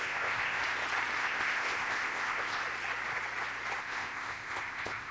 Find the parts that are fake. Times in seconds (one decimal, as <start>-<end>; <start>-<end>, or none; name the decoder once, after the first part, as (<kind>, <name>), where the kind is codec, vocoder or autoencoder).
0.0-0.6 (codec, ZipCodec); 1.2-2.6; 3.8-5.1